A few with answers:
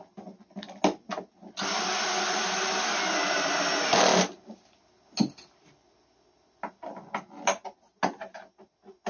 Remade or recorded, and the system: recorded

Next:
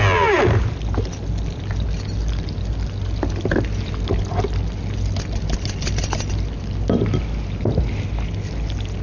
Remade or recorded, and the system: recorded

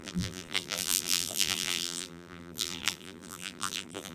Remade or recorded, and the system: remade, vocoder, BigVGAN v2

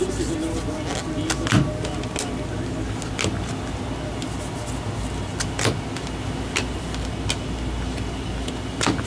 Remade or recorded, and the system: recorded